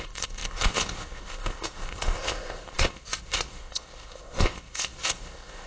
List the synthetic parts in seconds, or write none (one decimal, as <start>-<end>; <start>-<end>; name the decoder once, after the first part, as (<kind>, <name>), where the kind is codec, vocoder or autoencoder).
0.0-5.7 (codec, ZipCodec)